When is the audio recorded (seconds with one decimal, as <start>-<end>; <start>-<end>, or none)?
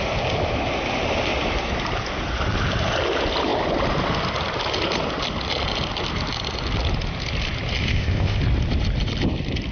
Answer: 0.0-7.9; 8.4-9.7